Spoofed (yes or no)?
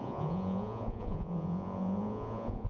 yes